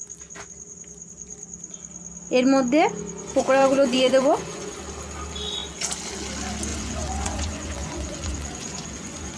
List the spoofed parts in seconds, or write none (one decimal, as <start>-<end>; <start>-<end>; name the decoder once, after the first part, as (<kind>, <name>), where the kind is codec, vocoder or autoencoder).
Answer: 3.6-4.8 (vocoder, Vocos); 6.7-9.4